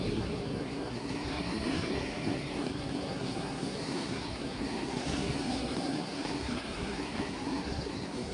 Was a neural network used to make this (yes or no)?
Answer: yes